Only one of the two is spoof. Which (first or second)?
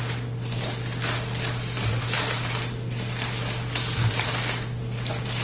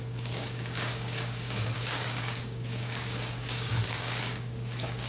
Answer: second